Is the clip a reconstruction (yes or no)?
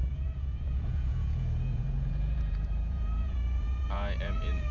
yes